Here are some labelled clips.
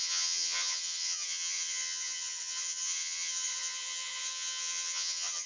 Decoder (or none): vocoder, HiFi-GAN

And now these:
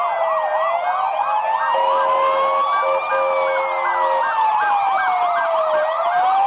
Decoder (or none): none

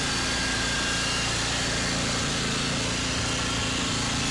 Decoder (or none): none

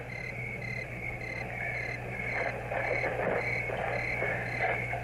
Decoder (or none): none